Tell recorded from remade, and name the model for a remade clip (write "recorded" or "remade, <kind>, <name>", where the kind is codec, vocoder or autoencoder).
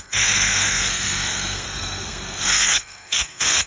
remade, codec, SNAC